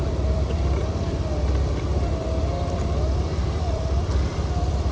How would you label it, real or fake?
fake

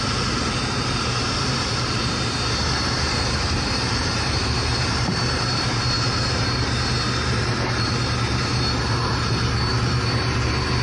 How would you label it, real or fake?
fake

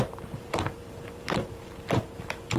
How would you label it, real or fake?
fake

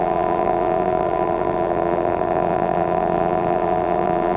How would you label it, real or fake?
fake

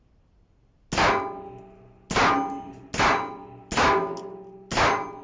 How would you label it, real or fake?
real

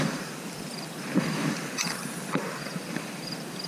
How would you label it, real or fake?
fake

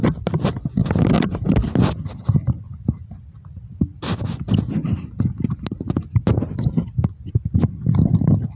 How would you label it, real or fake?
real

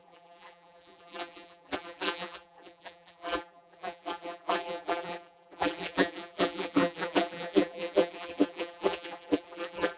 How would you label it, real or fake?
fake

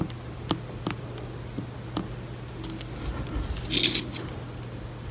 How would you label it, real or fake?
real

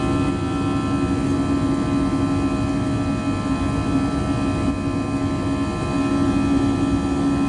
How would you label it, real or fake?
real